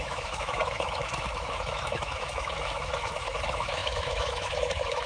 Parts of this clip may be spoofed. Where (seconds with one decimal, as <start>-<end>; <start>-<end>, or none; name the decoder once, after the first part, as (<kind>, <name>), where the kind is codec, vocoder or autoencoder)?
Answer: 0.0-5.1 (autoencoder, DAC-VAE)